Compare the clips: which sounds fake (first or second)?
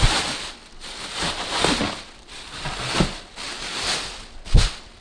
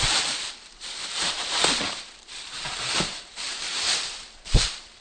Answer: second